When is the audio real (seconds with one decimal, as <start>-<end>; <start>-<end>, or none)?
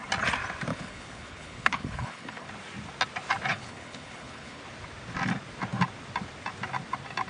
0.0-0.7; 2.5-3.5; 4.6-7.3